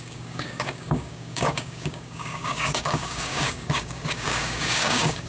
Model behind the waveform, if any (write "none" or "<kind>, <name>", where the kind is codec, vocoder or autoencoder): codec, DAC